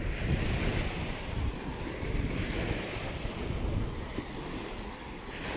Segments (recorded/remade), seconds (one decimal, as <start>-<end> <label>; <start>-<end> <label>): 0.0-5.6 recorded